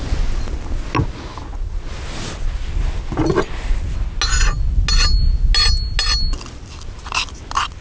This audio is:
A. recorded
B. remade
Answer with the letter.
A